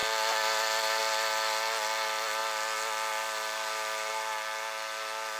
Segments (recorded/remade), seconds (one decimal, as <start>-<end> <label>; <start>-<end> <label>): 0.0-5.4 recorded